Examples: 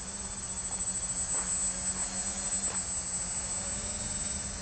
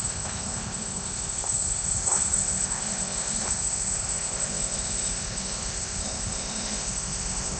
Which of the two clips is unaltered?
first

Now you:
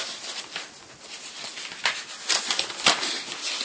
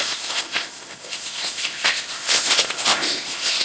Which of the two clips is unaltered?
first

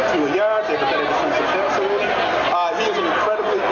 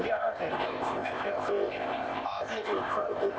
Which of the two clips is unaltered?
first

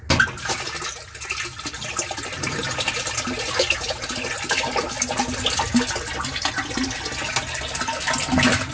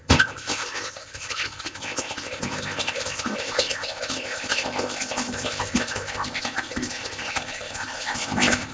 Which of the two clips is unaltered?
first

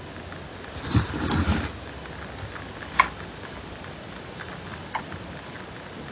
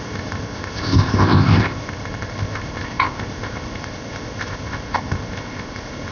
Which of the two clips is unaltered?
first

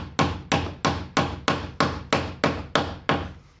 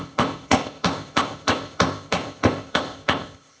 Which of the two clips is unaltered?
first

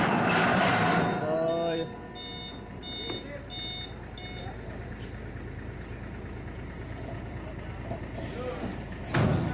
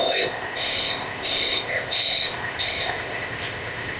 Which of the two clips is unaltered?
first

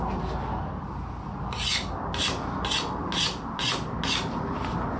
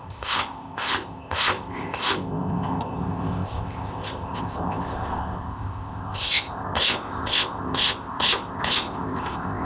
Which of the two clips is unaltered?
first